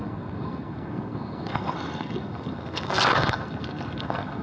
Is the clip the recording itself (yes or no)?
no